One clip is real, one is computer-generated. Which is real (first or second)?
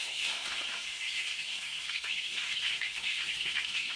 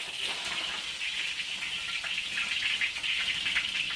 second